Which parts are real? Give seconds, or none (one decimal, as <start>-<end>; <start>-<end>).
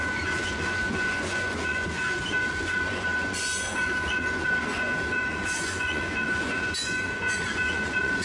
none